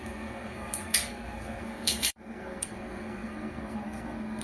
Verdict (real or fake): fake